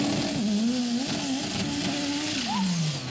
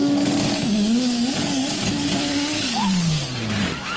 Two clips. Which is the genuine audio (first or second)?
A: first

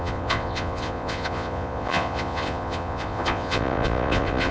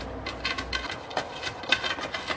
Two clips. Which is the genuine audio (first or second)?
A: second